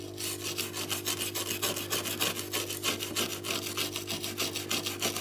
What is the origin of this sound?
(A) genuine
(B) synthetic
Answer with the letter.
A